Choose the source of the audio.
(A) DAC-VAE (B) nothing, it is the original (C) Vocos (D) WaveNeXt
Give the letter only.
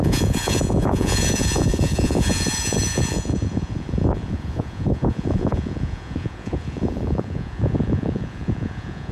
C